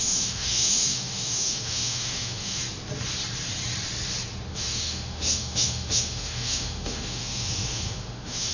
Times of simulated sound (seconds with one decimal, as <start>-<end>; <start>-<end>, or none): 0.0-2.6; 4.5-8.5